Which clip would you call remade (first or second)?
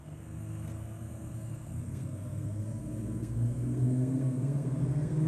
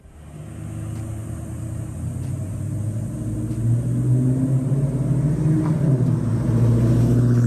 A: first